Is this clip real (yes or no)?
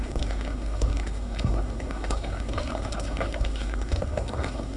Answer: no